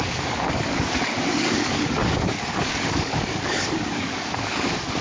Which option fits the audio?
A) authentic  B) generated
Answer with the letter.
B